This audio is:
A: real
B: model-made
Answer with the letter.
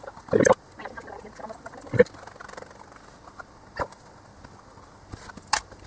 B